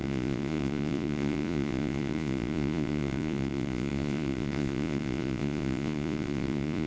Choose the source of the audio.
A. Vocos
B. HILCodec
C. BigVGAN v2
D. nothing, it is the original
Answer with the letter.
A